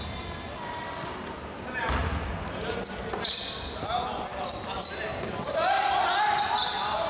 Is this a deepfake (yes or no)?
no